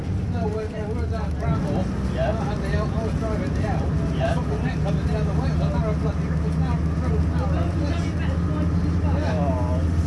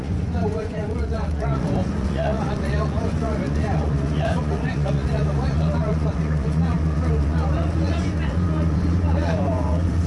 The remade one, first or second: second